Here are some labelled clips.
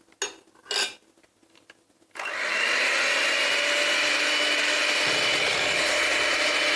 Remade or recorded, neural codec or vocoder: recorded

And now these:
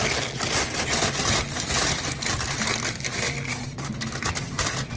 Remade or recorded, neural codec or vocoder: recorded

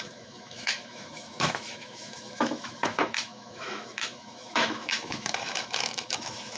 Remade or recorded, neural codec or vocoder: remade, autoencoder, DAC-VAE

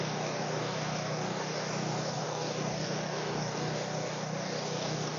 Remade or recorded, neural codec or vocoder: remade, codec, DAC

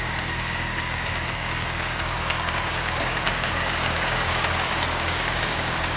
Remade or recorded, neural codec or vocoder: remade, codec, DAC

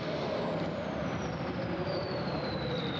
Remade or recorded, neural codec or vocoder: remade, vocoder, BigVGAN v2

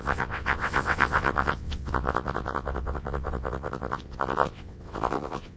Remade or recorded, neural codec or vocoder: remade, vocoder, WaveNeXt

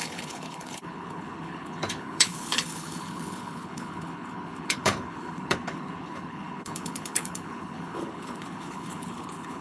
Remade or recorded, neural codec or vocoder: remade, codec, HILCodec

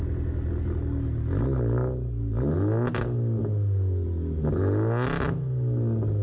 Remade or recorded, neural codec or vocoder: recorded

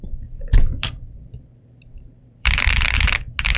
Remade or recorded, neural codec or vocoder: remade, vocoder, BigVGAN v2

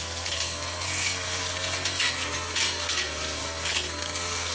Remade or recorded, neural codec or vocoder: remade, codec, SNAC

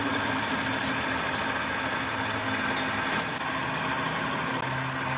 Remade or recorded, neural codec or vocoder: recorded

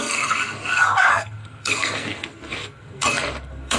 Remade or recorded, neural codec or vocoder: remade, codec, SNAC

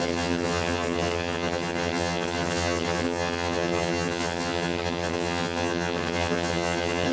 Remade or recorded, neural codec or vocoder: remade, vocoder, HiFi-GAN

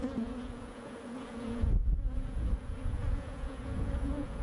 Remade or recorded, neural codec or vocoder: remade, vocoder, Vocos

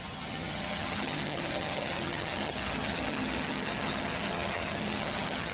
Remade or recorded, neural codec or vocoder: remade, vocoder, HiFi-GAN